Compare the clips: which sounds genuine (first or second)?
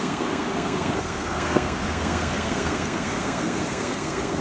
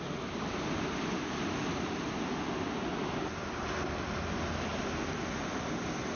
second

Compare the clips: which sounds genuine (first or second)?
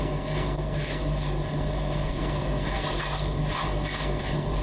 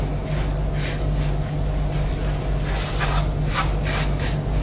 second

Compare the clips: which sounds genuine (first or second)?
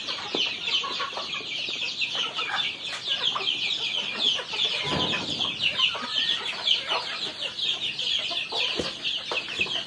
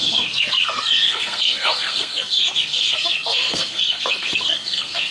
first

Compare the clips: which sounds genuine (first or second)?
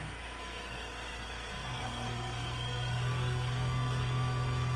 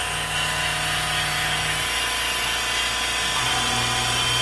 second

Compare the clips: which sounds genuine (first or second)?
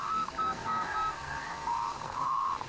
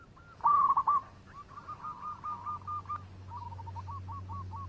second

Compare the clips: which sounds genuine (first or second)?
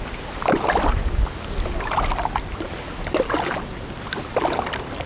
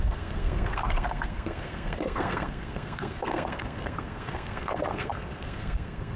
first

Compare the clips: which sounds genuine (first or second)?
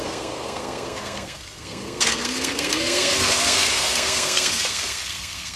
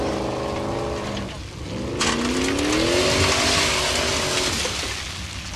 second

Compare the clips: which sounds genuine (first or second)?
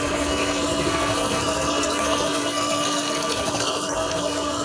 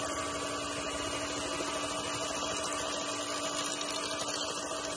second